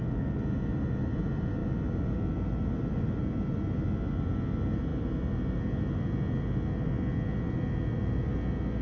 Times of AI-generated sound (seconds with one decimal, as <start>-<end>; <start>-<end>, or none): none